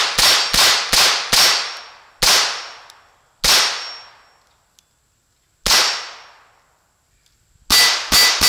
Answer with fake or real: real